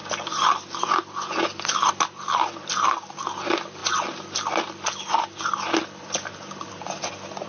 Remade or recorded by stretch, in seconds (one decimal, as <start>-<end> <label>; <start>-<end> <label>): 0.0-7.5 recorded